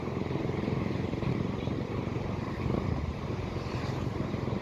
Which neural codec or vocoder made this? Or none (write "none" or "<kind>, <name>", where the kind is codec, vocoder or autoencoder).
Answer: vocoder, BigVGAN v2